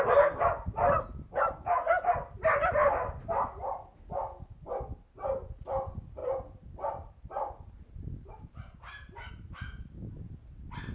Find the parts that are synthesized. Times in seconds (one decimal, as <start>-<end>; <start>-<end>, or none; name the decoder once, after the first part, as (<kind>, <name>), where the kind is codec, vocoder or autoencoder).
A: 6.2-9.3 (vocoder, BigVGAN v2)